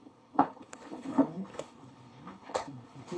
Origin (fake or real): fake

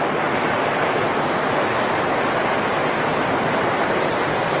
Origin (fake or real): real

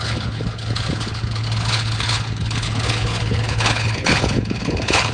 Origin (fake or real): fake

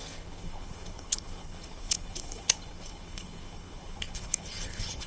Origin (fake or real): fake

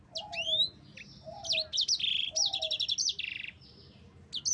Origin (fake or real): real